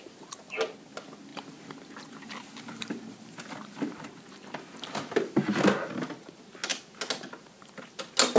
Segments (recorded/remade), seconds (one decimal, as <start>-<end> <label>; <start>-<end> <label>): 0.0-8.4 recorded